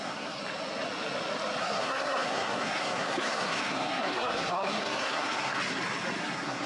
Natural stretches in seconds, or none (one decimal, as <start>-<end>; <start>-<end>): 0.4-1.6; 5.6-6.2